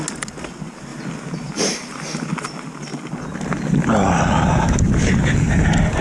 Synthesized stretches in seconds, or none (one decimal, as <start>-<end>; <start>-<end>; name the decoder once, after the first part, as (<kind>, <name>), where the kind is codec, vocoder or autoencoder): none